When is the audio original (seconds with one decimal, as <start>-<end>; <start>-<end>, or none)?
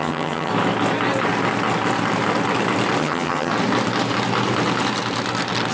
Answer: 0.5-3.0; 3.5-5.7